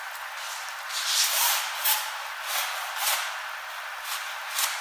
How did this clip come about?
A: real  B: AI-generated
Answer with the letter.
A